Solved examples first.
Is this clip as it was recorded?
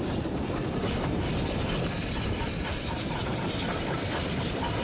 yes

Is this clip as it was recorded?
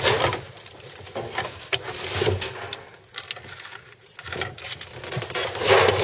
yes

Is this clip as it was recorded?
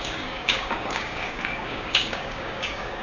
no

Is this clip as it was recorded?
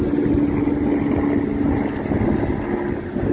yes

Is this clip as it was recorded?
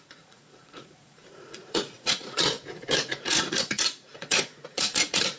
no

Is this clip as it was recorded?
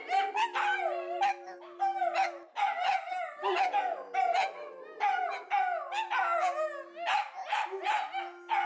yes